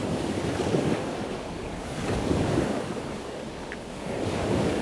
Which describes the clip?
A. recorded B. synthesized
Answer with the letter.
B